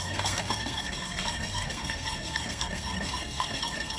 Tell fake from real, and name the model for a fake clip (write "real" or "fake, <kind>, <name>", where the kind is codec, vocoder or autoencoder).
fake, codec, SNAC